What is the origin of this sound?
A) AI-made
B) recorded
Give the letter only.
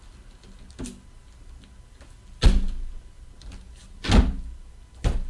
B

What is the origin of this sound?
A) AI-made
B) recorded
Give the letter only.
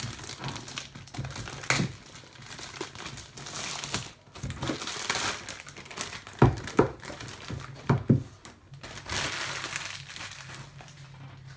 B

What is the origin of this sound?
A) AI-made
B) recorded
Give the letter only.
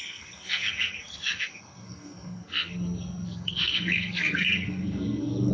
A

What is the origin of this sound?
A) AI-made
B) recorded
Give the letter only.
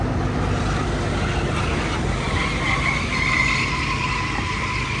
B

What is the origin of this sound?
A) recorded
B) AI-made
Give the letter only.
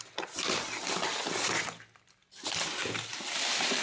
A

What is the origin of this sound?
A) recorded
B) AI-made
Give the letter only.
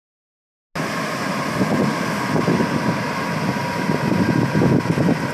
A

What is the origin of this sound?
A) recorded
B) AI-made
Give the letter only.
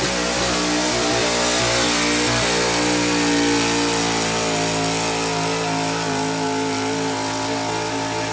A